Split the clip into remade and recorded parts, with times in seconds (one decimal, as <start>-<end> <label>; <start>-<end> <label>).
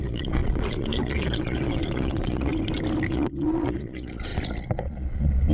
0.0-2.5 remade; 2.5-3.1 recorded; 3.1-5.5 remade